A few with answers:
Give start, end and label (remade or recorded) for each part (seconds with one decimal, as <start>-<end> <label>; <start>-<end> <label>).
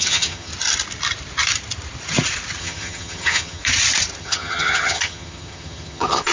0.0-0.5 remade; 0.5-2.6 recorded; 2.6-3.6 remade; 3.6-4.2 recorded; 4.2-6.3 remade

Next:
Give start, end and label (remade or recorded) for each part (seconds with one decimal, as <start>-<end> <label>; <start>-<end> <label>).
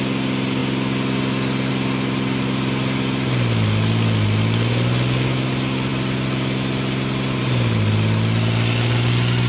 0.0-9.5 recorded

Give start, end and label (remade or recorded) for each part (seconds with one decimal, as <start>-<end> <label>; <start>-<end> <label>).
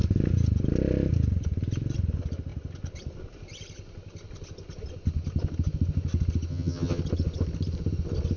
0.0-6.5 recorded; 6.5-7.0 remade; 7.0-8.4 recorded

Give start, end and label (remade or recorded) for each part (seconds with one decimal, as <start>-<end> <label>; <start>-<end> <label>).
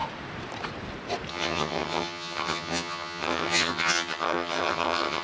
0.0-1.3 recorded; 1.3-5.2 remade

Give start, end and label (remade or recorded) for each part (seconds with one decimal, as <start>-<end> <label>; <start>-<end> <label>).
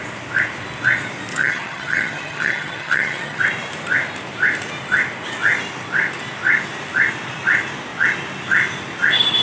0.0-1.3 recorded; 1.3-3.4 remade; 3.4-9.4 recorded